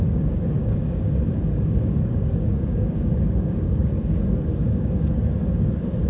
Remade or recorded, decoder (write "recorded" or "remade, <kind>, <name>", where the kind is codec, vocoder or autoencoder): remade, codec, DAC